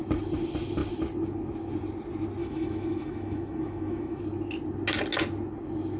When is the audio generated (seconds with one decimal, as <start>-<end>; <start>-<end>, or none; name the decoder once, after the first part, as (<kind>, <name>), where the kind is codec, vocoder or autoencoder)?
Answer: 2.4-4.2 (autoencoder, DAC-VAE)